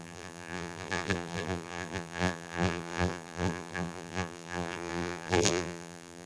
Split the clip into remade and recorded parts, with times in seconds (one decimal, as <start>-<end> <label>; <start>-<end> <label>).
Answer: 0.0-6.3 remade